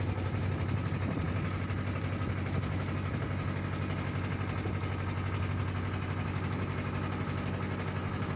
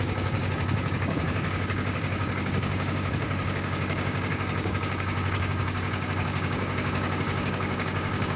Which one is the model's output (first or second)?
second